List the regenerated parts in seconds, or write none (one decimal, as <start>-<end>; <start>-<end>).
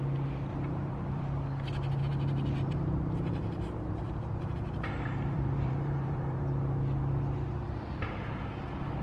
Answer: 0.5-1.2; 2.0-6.4